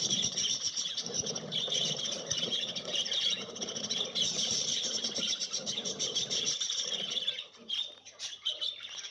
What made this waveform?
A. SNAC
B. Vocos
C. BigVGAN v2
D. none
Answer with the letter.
C